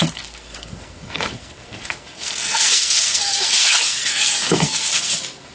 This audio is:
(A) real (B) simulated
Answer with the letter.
B